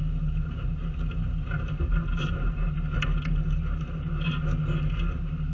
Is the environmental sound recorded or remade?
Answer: recorded